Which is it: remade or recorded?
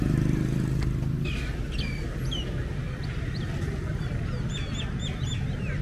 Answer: recorded